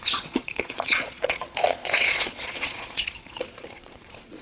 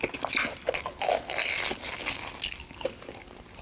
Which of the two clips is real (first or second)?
second